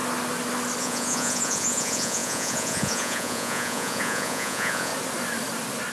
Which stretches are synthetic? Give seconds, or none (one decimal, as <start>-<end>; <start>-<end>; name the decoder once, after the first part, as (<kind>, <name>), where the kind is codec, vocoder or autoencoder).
0.8-4.9 (vocoder, Vocos)